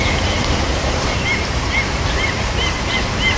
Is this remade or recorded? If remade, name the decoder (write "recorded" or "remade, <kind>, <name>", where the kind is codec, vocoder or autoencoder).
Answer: remade, vocoder, BigVGAN v2